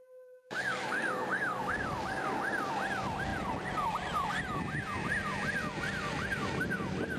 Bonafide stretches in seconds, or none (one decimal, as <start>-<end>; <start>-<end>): 2.3-7.2